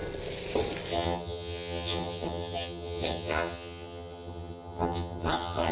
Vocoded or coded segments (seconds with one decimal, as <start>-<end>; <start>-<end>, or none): 0.9-5.7